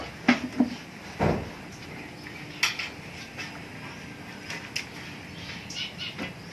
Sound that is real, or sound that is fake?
real